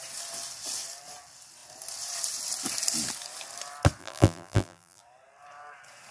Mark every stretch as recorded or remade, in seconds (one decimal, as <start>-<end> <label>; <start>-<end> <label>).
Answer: 0.0-4.0 recorded; 4.0-5.0 remade; 5.0-6.1 recorded